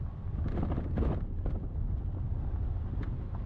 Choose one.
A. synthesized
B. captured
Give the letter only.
B